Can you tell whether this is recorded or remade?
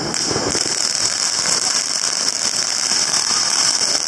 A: remade